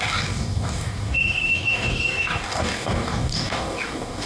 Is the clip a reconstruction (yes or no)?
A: yes